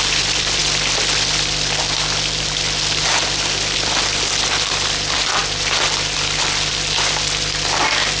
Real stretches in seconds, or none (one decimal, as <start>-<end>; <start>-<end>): 0.0-8.2